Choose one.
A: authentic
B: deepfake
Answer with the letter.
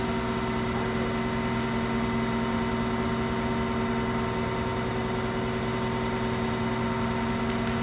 A